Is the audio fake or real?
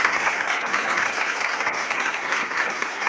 fake